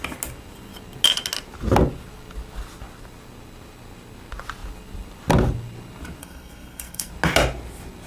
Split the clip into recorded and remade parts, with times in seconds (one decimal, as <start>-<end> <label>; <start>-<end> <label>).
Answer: 0.0-6.2 recorded; 6.2-7.1 remade; 7.1-8.1 recorded